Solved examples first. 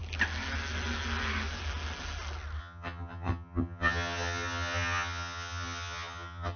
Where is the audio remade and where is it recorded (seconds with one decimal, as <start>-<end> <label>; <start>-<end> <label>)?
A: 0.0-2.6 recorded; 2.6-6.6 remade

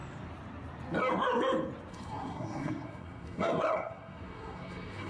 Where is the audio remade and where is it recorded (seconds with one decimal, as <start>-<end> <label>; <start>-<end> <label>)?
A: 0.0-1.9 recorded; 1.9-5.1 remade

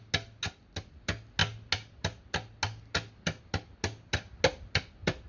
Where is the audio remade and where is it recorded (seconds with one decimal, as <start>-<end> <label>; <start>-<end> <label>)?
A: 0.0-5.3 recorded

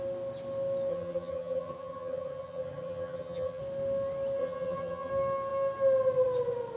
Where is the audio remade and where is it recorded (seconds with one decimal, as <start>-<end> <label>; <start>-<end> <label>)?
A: 0.0-0.9 recorded; 0.9-3.6 remade; 3.6-4.4 recorded; 4.4-5.1 remade; 5.1-6.8 recorded

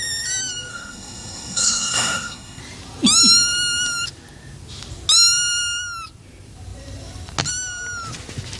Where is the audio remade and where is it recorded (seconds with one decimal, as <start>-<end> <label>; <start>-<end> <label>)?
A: 0.0-0.7 recorded; 0.7-2.6 remade; 2.6-8.6 recorded

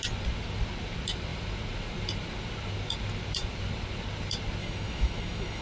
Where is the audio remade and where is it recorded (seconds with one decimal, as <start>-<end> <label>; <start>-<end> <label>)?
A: 0.0-4.6 recorded; 4.6-5.6 remade

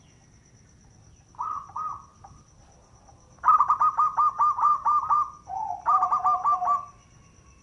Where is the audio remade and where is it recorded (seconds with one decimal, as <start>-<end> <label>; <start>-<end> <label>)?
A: 0.0-7.6 recorded